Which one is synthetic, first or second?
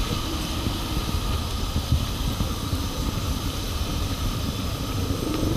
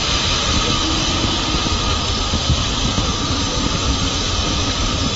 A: first